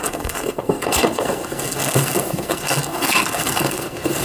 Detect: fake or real fake